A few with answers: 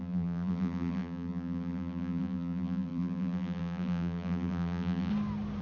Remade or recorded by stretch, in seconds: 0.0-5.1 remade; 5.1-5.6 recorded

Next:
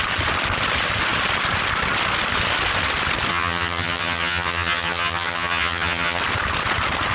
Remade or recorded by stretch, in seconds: 0.0-3.3 recorded; 3.3-6.2 remade; 6.2-7.1 recorded

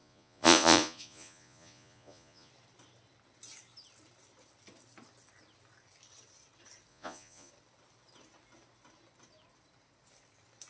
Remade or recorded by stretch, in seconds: 0.0-2.5 remade; 2.5-6.9 recorded; 6.9-7.5 remade; 7.5-10.7 recorded

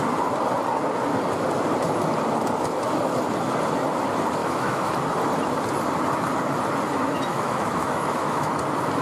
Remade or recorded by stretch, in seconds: 0.0-4.4 recorded; 4.4-4.9 remade; 4.9-7.3 recorded; 7.3-8.5 remade; 8.5-9.0 recorded